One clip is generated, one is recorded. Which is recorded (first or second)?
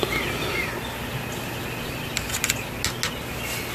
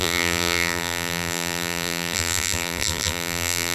first